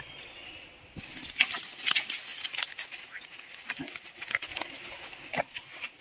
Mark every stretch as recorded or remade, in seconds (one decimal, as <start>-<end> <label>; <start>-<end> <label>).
0.0-6.0 recorded